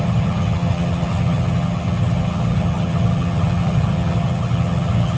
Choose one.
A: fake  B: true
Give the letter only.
A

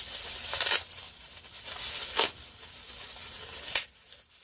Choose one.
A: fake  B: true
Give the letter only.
B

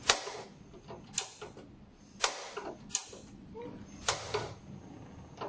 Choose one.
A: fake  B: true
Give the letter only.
B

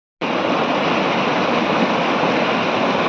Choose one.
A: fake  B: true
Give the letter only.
B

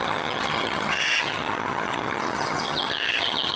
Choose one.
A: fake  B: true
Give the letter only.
A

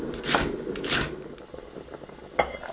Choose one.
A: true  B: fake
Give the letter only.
A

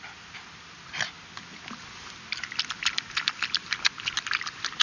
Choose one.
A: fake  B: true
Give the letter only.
B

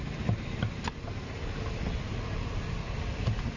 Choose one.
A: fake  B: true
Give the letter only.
B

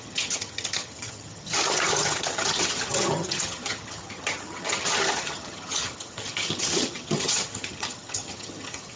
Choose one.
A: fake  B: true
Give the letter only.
A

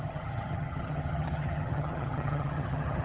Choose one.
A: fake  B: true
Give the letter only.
A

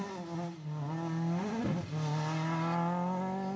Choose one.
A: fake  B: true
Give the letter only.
B